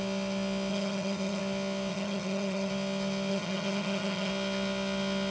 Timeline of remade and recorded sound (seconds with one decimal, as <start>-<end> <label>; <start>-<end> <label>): 0.0-0.7 recorded; 0.7-1.4 remade; 1.4-1.9 recorded; 1.9-2.7 remade; 2.7-3.3 recorded; 3.3-4.3 remade; 4.3-5.3 recorded